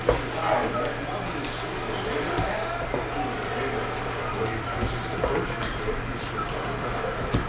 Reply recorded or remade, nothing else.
recorded